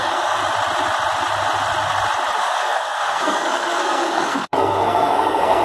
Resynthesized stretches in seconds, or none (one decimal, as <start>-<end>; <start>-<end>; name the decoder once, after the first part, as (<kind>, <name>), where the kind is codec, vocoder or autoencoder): 0.0-0.4 (codec, SNAC); 2.4-5.6